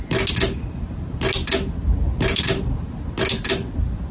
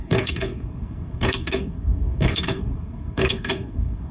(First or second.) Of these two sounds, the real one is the first